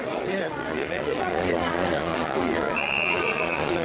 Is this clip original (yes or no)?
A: no